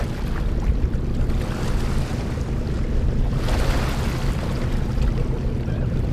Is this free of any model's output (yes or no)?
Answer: yes